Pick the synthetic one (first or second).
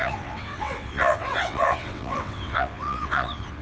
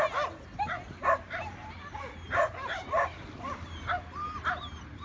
first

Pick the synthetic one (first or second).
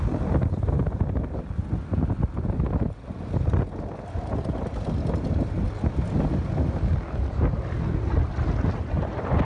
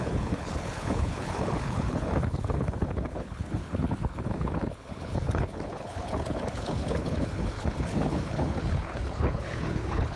second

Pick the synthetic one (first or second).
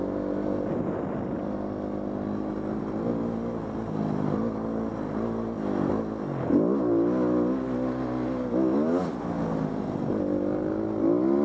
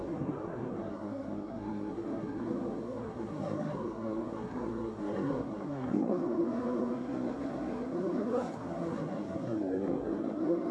second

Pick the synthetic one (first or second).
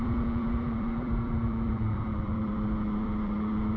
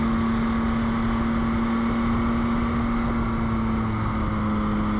first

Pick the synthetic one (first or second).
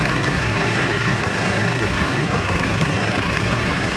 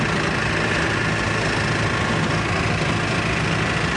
first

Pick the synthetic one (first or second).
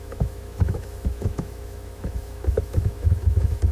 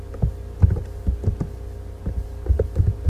first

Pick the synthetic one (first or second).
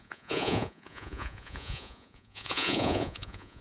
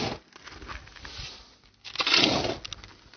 first